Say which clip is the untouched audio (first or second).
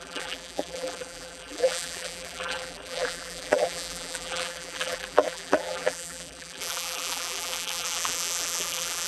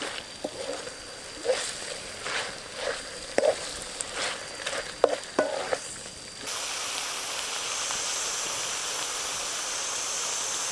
second